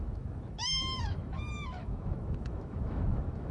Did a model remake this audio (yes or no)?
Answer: yes